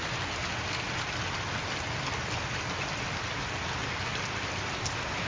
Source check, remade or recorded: recorded